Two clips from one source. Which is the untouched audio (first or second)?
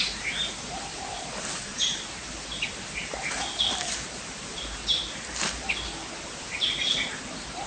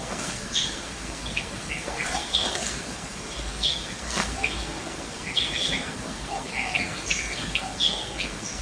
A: first